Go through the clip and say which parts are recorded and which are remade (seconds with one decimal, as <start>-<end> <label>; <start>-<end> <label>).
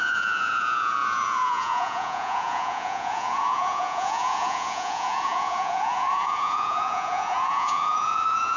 0.0-8.6 remade